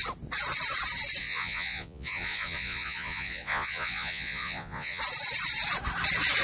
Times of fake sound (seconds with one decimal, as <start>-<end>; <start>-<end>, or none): 1.2-5.0